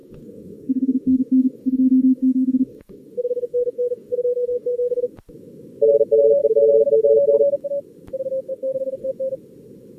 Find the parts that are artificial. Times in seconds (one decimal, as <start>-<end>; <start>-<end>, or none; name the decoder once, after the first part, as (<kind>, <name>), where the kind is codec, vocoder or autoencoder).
0.0-5.1 (codec, DAC); 8.5-9.1